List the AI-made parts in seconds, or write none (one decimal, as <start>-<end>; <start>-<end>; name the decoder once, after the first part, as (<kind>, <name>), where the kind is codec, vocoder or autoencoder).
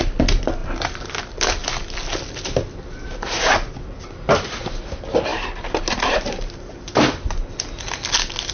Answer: 5.3-6.9 (vocoder, BigVGAN v2)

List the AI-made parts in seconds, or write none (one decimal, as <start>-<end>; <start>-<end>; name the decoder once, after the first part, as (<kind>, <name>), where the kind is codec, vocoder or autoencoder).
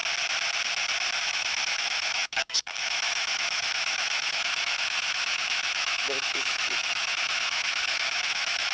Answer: 1.2-8.7 (autoencoder, DAC-VAE)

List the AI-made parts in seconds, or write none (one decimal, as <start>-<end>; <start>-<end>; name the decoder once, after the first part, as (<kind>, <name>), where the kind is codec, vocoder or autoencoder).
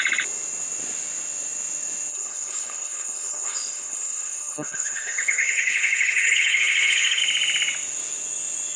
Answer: 2.1-7.2 (codec, HILCodec)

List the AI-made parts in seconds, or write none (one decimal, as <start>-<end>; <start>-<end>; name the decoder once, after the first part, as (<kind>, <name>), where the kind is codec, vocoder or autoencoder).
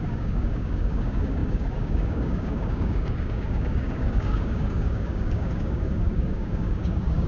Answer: 0.0-7.3 (codec, DAC)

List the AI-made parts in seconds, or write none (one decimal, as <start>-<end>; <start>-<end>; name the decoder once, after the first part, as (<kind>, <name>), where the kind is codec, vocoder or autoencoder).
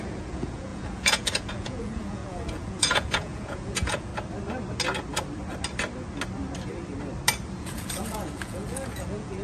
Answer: 0.0-4.1 (vocoder, Vocos); 7.6-9.4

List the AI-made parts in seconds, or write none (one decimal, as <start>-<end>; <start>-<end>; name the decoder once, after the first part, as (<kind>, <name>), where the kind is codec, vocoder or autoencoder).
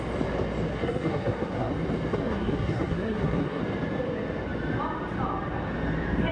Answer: 0.7-1.7 (codec, SNAC); 2.1-3.6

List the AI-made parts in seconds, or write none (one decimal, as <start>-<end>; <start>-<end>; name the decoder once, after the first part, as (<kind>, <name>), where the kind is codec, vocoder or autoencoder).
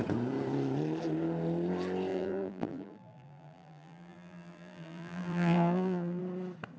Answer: 2.1-6.2 (vocoder, BigVGAN v2)